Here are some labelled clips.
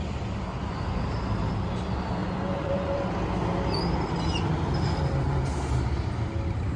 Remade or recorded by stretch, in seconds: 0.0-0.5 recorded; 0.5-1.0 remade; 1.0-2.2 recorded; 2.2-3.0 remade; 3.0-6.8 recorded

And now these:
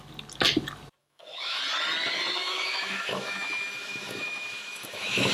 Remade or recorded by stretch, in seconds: 0.0-1.0 recorded; 1.0-1.6 remade; 1.6-2.4 recorded; 2.4-5.3 remade

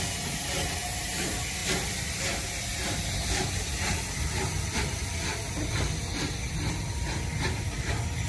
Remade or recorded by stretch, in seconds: 0.0-8.3 recorded

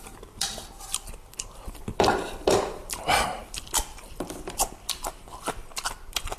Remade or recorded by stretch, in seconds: 0.0-6.4 remade